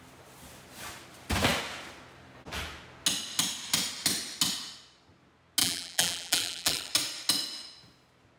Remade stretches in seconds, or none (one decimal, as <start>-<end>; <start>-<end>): 5.6-6.9